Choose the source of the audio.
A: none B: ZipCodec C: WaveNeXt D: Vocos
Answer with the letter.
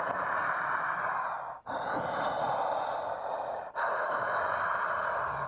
A